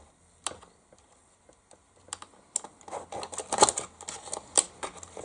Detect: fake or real real